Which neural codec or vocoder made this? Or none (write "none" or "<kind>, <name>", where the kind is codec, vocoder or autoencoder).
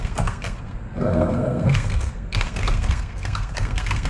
codec, SNAC